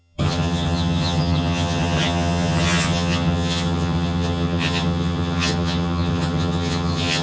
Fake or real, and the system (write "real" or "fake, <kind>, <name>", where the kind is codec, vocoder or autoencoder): fake, vocoder, HiFi-GAN